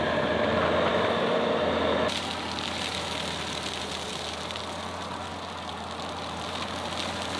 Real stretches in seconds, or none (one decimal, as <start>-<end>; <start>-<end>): 0.0-7.4